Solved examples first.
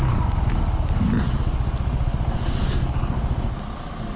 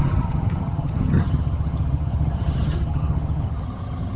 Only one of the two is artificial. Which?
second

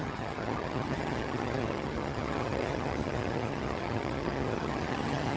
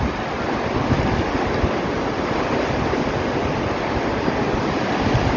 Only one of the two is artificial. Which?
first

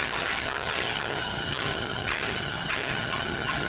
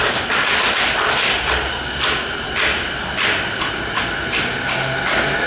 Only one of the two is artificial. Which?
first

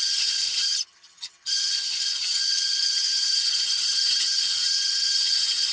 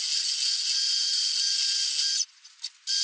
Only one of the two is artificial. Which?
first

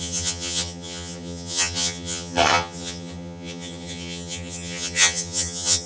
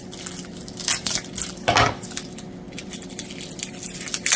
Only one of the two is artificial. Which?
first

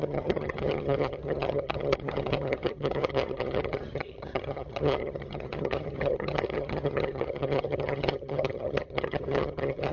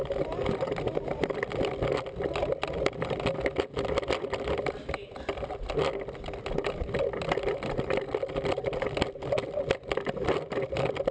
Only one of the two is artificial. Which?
first